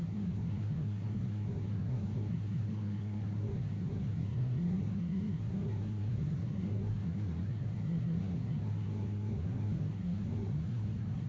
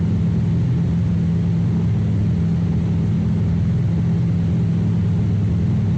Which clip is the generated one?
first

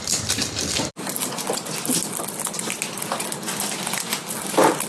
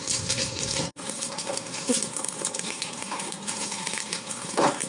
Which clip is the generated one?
second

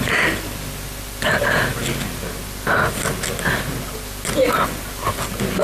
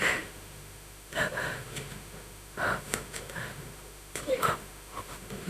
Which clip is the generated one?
second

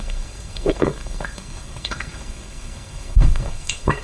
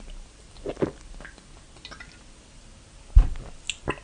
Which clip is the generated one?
first